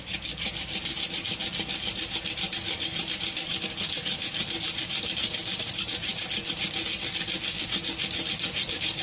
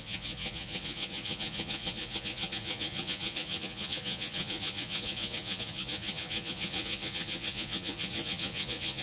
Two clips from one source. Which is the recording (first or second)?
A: first